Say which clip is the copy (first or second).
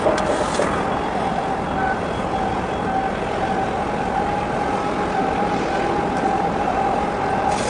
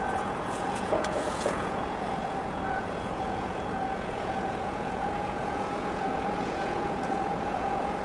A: second